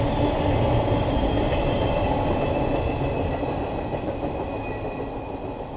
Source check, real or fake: real